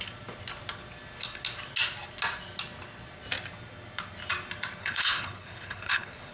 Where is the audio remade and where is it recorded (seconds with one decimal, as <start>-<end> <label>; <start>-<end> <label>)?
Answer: 0.0-4.8 recorded; 4.8-6.3 remade